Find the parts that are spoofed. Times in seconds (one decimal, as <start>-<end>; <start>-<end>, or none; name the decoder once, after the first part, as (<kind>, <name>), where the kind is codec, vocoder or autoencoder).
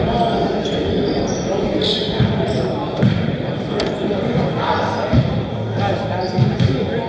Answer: 1.6-5.5 (vocoder, BigVGAN v2)